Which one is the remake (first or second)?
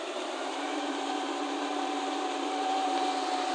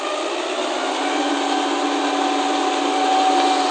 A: first